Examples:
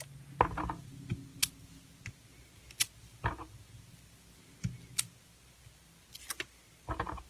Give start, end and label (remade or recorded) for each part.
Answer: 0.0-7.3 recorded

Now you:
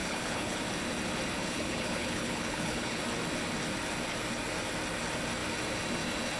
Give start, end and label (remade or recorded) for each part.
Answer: 0.0-0.6 remade; 0.6-1.4 recorded; 1.4-3.0 remade; 3.0-6.4 recorded

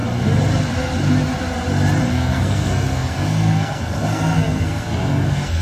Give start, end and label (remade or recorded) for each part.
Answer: 0.0-2.1 recorded; 2.1-5.6 remade

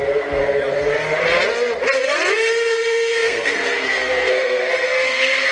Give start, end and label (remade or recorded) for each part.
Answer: 0.0-0.4 remade; 0.4-2.7 recorded; 2.7-5.5 remade

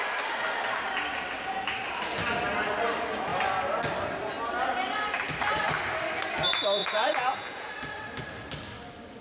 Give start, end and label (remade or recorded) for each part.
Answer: 0.0-6.8 recorded; 6.8-7.7 remade; 7.7-9.2 recorded

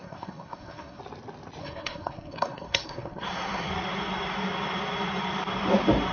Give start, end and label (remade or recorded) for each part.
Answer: 0.0-1.0 remade; 1.0-1.6 recorded; 1.6-3.7 remade; 3.7-6.1 recorded

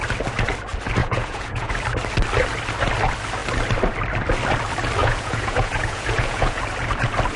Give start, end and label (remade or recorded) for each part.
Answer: 0.0-1.0 recorded; 1.0-1.7 remade; 1.7-5.0 recorded; 5.0-6.6 remade; 6.6-7.4 recorded